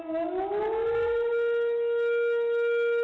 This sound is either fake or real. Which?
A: real